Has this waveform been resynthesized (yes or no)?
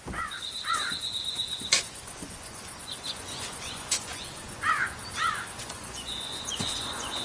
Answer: yes